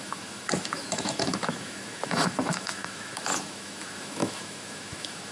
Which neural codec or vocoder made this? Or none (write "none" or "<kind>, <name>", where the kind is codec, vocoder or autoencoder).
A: autoencoder, DAC-VAE